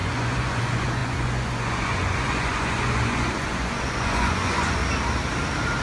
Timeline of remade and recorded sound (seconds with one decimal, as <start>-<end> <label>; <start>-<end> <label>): 0.0-4.8 remade; 4.8-5.8 recorded